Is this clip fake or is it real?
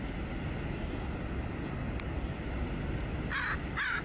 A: real